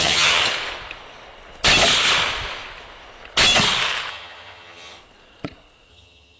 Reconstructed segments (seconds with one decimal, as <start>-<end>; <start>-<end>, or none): 0.0-0.4; 4.1-5.0; 5.9-6.4

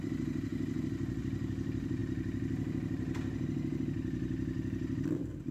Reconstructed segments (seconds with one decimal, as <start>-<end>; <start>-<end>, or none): 0.0-0.5; 1.2-2.0